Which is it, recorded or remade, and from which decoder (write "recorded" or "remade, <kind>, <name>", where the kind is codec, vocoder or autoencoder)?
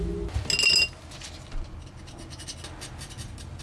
recorded